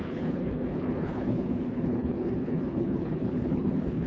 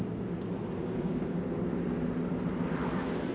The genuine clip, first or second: second